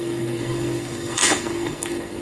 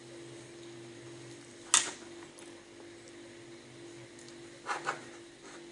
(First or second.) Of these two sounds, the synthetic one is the first